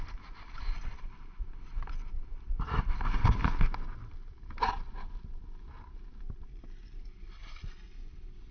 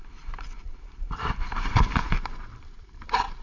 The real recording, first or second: first